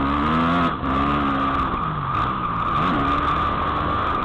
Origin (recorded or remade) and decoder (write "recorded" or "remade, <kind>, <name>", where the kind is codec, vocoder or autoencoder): recorded